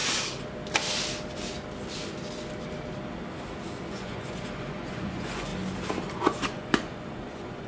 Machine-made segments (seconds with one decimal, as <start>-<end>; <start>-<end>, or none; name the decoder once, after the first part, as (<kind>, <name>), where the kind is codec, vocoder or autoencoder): 3.9-5.5 (vocoder, Vocos); 6.1-7.7